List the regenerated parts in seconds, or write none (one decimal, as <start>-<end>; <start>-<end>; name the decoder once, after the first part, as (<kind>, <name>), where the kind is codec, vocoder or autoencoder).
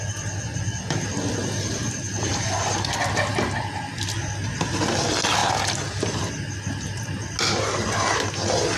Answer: 1.8-3.6 (vocoder, BigVGAN v2); 5.4-6.2